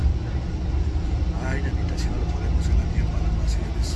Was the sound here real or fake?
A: real